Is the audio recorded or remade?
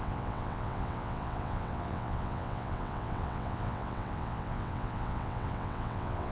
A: remade